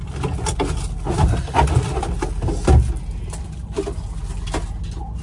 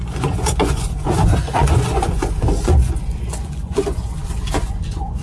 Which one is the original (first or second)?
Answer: first